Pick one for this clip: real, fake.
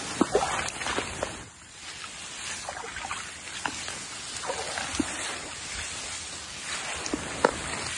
real